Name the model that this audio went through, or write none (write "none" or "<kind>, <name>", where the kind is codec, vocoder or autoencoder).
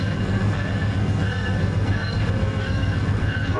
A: codec, SNAC